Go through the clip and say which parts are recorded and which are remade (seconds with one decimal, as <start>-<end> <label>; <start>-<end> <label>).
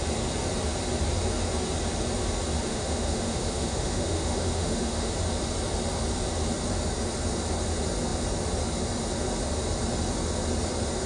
0.0-2.7 recorded; 2.7-5.1 remade; 5.1-11.1 recorded